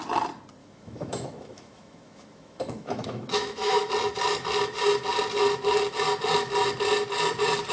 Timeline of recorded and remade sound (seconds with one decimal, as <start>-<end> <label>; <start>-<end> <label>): 0.0-0.6 recorded; 0.6-3.9 remade; 3.9-7.7 recorded